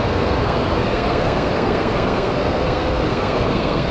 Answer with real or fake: fake